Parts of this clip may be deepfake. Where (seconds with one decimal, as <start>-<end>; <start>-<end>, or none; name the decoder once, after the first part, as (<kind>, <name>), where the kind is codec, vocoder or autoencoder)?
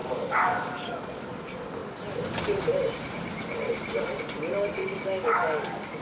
0.0-1.4 (codec, DAC); 4.8-6.0